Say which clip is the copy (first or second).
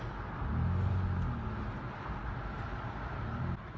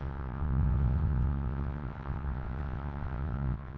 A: second